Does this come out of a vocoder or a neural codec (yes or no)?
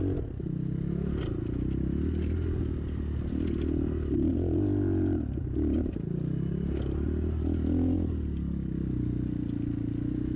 no